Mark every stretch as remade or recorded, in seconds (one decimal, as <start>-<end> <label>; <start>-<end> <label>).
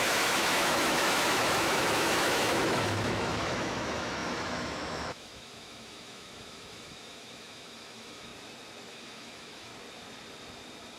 0.0-8.3 remade; 8.3-8.9 recorded; 8.9-9.7 remade; 9.7-11.0 recorded